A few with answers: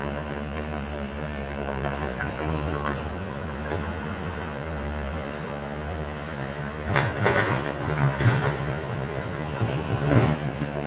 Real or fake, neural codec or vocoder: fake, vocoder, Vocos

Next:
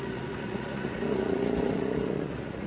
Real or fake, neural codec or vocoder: fake, vocoder, Vocos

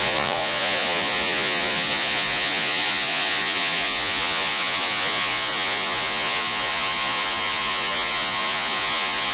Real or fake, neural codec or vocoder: fake, vocoder, Vocos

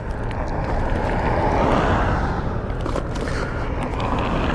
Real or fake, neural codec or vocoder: real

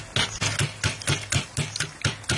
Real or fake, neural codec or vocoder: real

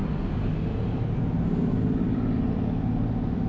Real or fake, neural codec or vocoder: real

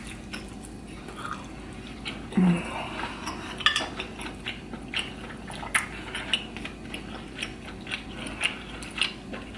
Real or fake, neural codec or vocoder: real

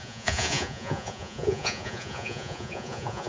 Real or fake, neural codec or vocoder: fake, vocoder, Vocos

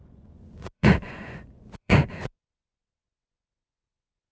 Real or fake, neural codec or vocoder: fake, vocoder, Vocos